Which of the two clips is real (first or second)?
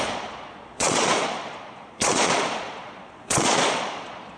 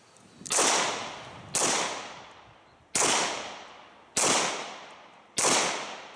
second